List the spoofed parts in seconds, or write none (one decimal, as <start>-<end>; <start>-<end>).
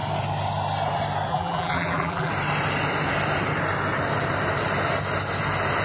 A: 1.3-2.3